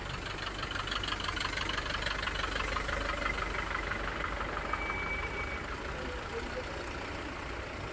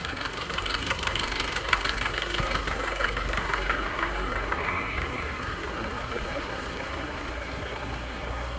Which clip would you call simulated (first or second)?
second